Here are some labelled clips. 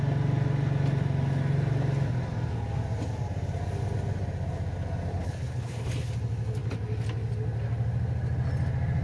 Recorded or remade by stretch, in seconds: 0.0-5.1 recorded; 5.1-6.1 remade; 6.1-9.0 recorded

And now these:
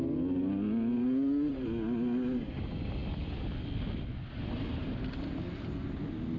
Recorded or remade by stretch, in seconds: 0.0-6.4 recorded

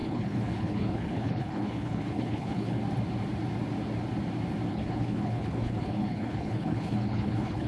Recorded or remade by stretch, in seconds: 0.0-2.8 remade; 2.8-4.7 recorded; 4.7-7.7 remade